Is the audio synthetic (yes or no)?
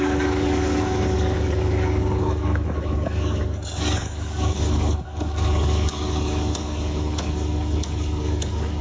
yes